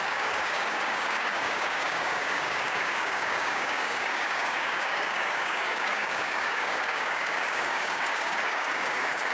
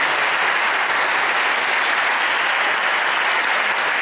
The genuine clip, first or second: second